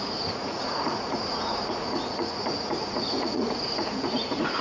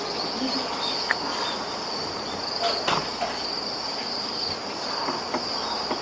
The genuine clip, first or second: second